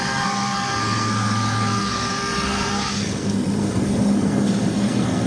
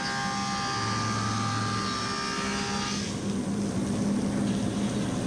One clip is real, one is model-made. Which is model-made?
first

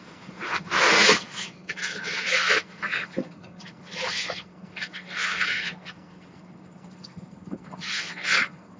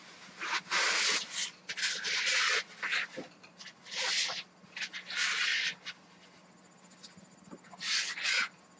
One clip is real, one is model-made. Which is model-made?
first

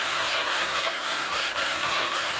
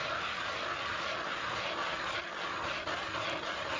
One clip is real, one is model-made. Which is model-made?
first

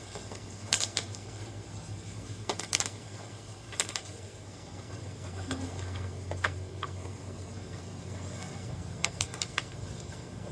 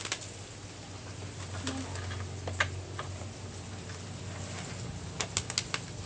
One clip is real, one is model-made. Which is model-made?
first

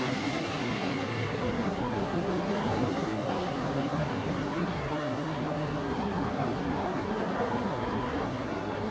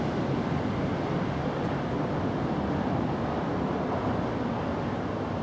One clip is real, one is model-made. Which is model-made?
first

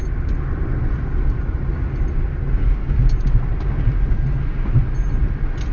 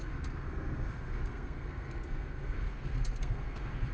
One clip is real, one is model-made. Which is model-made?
second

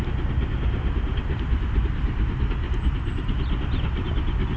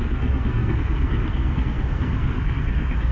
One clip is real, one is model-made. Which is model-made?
second